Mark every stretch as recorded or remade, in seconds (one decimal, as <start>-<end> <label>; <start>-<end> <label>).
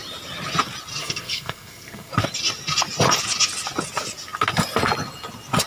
0.0-1.0 recorded; 1.0-2.1 remade; 2.1-5.7 recorded